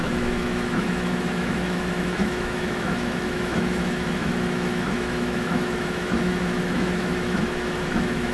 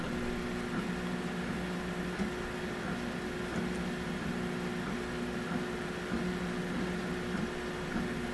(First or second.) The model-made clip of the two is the first